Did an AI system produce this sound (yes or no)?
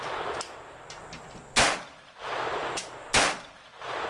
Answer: no